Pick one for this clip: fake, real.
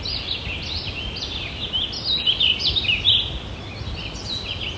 real